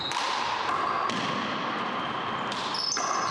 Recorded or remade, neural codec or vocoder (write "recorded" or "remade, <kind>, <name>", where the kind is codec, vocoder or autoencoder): recorded